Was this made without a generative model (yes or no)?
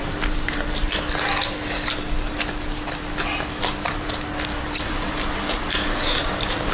yes